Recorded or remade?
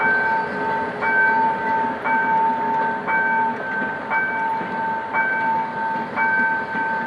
recorded